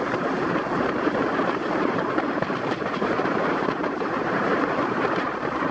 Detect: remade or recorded remade